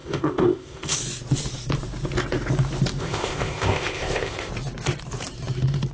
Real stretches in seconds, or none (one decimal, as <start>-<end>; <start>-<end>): 1.0-3.0; 4.5-5.9